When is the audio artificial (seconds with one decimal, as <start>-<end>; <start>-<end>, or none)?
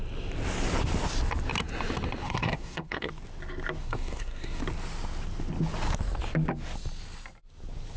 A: 2.2-3.1; 3.8-4.6